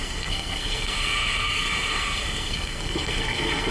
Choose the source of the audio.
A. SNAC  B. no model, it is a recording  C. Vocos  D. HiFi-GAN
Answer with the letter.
A